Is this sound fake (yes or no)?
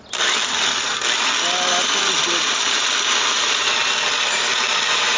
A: no